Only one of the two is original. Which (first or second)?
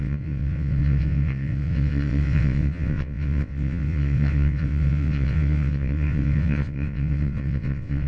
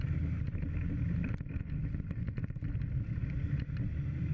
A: second